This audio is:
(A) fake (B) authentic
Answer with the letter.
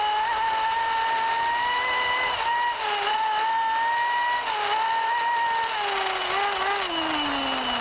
B